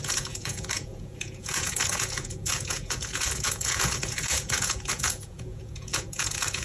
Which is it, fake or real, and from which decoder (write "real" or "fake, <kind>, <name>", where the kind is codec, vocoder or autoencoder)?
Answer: fake, vocoder, Vocos